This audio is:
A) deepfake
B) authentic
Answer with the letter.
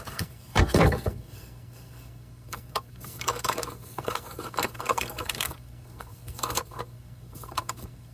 A